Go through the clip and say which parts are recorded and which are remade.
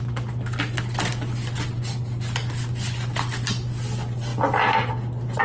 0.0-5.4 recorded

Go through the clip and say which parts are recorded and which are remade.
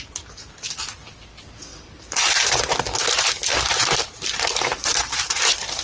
0.0-1.7 recorded; 1.7-2.8 remade; 2.8-3.5 recorded; 3.5-5.8 remade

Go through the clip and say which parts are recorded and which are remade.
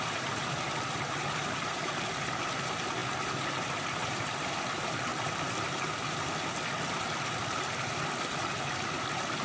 0.0-9.4 recorded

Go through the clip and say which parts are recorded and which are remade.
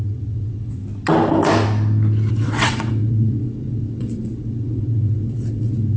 0.0-0.8 remade; 0.8-2.3 recorded; 2.3-6.0 remade